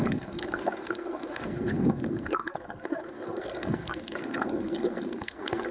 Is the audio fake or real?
fake